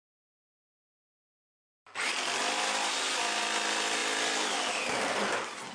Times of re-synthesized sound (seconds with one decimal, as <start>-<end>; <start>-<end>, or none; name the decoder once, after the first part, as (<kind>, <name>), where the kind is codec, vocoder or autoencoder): none

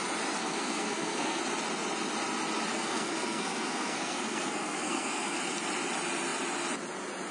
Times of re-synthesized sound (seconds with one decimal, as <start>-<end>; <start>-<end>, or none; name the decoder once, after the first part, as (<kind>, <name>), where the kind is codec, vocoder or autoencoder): 0.4-1.4 (codec, SNAC); 2.7-5.4